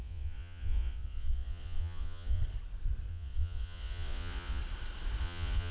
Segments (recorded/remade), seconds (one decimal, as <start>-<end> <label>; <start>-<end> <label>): 0.0-2.4 remade; 2.4-3.1 recorded; 3.1-4.6 remade; 4.6-5.2 recorded; 5.2-5.7 remade